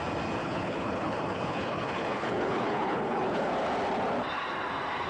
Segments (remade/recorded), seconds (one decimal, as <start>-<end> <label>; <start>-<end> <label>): 0.0-0.4 recorded; 0.4-3.5 remade; 3.5-5.1 recorded